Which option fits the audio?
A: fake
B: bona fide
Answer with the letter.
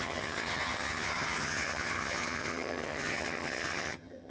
A